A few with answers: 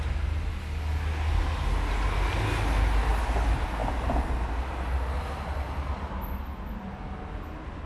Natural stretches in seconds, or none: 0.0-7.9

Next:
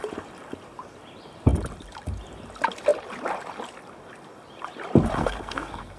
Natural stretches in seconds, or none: 0.0-5.2

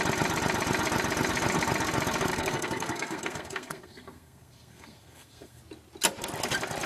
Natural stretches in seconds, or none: 0.0-2.3; 5.6-6.9

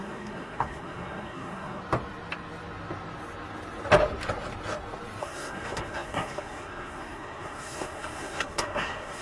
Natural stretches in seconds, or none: 1.8-5.2

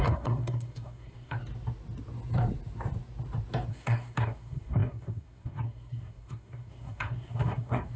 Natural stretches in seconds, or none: 1.4-3.7